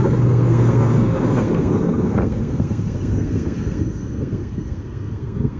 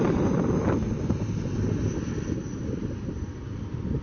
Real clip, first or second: second